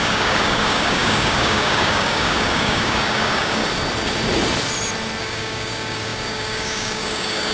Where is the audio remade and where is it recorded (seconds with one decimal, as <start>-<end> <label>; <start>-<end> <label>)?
0.0-3.6 remade; 3.6-5.2 recorded; 5.2-7.5 remade